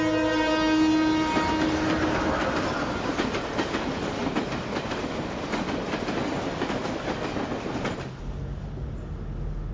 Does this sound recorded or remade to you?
recorded